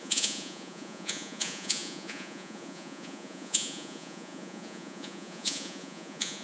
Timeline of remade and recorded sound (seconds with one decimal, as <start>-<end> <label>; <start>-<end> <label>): 0.0-6.4 remade